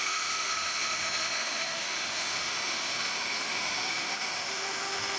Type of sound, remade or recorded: remade